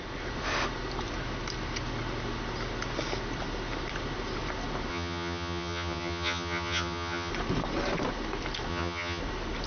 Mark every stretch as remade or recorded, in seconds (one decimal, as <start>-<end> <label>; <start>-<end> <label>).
0.0-4.9 recorded; 4.9-7.3 remade; 7.3-8.7 recorded; 8.7-9.2 remade; 9.2-9.7 recorded